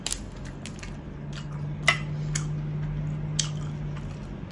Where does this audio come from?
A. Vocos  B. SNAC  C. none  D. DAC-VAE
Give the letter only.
C